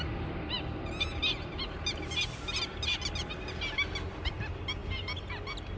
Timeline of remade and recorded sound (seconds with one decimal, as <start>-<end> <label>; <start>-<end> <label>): 0.0-5.8 recorded